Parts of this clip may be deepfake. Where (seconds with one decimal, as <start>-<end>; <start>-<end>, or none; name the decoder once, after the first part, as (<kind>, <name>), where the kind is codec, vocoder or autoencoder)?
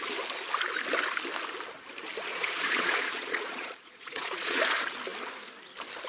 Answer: 2.3-4.6 (vocoder, Vocos)